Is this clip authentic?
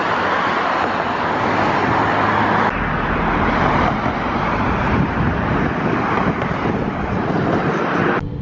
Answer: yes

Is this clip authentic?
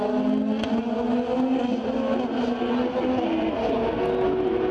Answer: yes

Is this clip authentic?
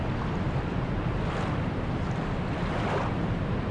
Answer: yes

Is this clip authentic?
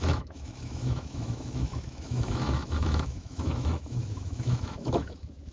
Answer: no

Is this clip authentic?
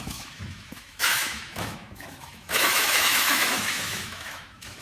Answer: no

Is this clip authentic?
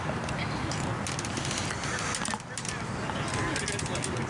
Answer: yes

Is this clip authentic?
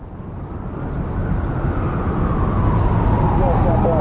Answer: yes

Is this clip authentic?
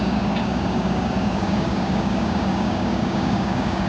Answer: no